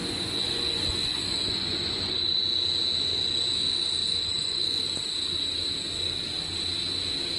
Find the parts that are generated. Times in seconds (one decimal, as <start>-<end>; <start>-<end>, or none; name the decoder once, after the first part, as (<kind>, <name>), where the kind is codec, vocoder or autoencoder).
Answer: 0.0-2.4 (vocoder, Vocos); 4.0-4.8